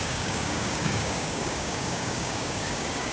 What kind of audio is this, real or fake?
fake